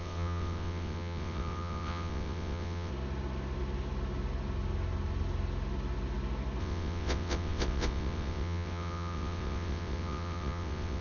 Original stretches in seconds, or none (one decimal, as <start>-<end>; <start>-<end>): 2.9-6.6